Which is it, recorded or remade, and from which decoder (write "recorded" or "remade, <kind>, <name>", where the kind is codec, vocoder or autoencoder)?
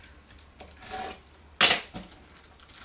recorded